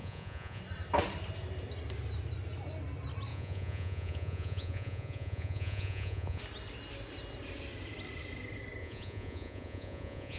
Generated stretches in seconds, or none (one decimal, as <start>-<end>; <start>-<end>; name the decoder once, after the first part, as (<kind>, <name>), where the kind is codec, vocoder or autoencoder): 0.0-0.6 (vocoder, Vocos); 3.3-6.4; 8.8-10.4